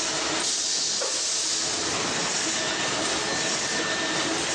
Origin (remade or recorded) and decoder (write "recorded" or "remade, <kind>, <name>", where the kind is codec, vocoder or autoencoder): recorded